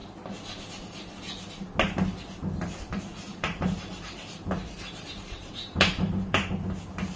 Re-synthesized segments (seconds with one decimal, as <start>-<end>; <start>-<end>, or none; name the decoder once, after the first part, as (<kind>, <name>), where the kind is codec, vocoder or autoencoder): 3.3-6.5 (vocoder, BigVGAN v2)

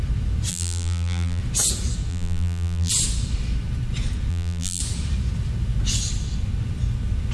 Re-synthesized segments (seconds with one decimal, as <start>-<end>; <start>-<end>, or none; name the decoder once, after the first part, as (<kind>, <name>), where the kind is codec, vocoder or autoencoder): 0.5-1.4 (vocoder, BigVGAN v2); 2.1-2.9; 4.3-4.8

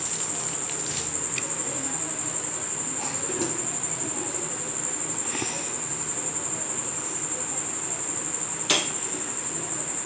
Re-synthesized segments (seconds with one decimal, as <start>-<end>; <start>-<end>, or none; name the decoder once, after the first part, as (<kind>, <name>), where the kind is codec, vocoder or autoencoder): none

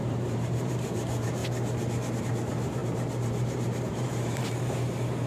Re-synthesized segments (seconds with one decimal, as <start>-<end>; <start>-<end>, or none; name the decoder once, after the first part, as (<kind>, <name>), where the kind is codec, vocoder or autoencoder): 0.0-1.4 (vocoder, BigVGAN v2); 2.2-5.3

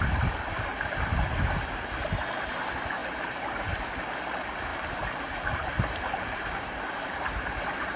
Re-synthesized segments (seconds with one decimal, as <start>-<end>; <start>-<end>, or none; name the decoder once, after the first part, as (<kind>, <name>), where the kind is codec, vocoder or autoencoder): 3.0-3.8 (vocoder, BigVGAN v2); 4.7-8.0

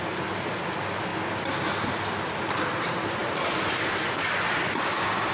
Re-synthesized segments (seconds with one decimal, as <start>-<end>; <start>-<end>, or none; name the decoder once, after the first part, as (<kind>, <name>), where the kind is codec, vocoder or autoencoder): 3.2-4.5 (vocoder, BigVGAN v2)